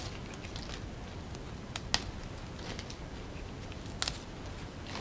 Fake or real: real